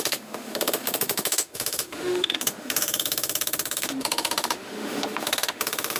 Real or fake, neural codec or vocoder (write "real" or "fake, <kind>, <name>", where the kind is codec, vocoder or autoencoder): fake, autoencoder, DAC-VAE